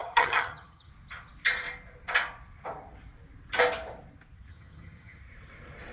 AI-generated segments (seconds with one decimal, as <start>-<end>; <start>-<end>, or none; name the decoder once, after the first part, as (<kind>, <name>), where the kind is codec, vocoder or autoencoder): 0.0-0.9 (vocoder, HiFi-GAN); 4.5-5.2